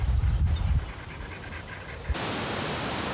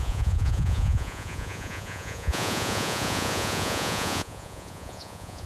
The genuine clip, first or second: first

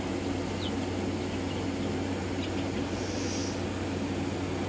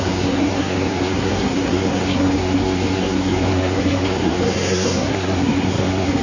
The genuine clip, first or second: first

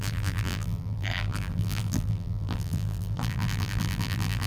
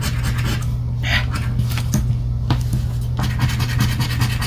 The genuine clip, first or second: second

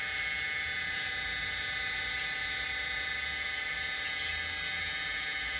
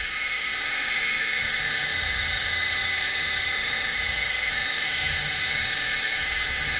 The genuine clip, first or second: first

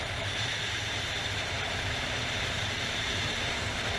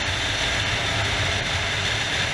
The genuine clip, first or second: second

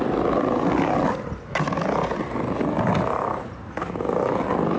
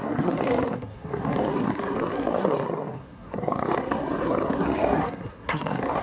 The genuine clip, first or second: first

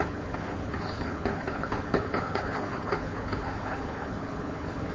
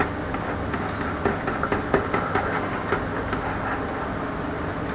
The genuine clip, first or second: second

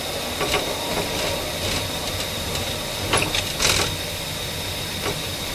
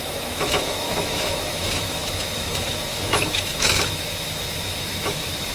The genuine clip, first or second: first